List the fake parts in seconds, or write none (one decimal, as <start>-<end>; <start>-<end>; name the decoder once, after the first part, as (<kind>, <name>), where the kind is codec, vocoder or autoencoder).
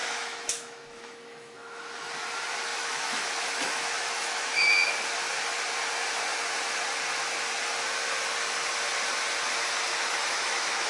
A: 0.0-2.1 (autoencoder, DAC-VAE); 2.7-4.7; 9.9-10.9